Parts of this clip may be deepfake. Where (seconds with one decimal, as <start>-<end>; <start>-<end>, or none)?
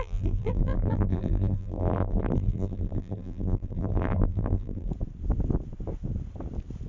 0.0-4.9